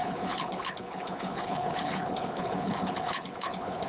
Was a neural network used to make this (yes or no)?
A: yes